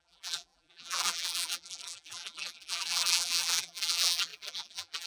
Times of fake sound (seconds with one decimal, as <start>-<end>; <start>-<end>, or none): 0.0-5.1